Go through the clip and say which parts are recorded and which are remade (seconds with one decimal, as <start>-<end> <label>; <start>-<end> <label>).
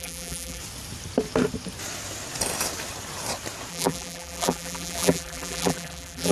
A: 0.0-0.6 remade; 0.6-3.7 recorded; 3.7-6.3 remade